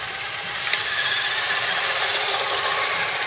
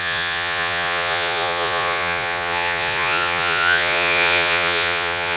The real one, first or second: first